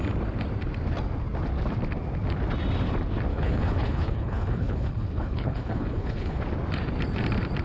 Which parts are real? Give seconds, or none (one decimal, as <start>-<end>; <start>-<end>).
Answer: 0.0-3.3; 6.4-7.6